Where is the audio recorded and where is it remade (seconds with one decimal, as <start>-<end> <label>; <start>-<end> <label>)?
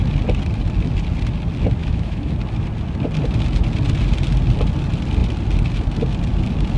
0.0-1.8 recorded; 1.8-2.3 remade; 2.3-6.8 recorded